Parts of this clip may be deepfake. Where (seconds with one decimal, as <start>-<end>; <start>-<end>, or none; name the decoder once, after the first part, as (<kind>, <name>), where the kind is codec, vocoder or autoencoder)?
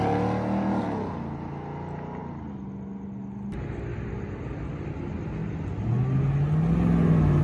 none